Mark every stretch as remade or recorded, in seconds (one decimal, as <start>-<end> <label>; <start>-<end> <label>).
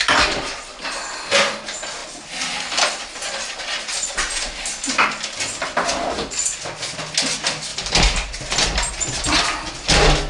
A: 0.0-10.3 recorded